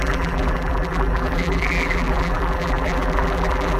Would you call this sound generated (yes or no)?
yes